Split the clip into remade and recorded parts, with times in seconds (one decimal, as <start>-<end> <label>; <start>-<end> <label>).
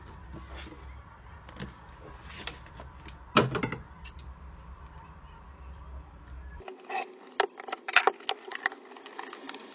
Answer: 0.0-4.2 recorded; 4.2-7.1 remade; 7.1-9.7 recorded